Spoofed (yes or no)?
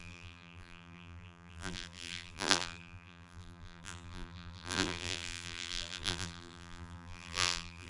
yes